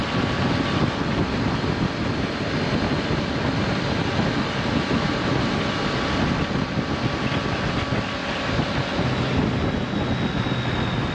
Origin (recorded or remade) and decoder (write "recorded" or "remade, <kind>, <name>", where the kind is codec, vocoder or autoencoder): recorded